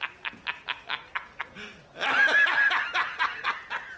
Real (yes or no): yes